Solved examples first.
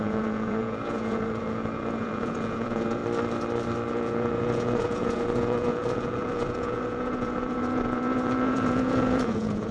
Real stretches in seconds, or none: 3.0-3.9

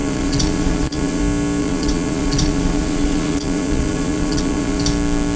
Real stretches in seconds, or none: 1.2-1.6; 4.8-5.4

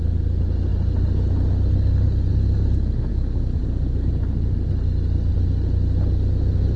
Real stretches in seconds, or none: 0.0-6.8

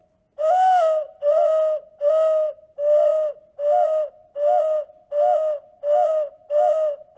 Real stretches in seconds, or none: 0.0-7.2